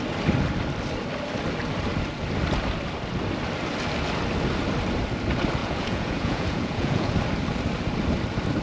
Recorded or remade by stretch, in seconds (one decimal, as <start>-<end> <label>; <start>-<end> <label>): 0.0-5.6 recorded; 5.6-7.1 remade; 7.1-8.6 recorded